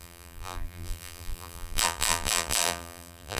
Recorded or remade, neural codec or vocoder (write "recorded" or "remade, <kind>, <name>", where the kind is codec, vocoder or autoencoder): remade, vocoder, BigVGAN v2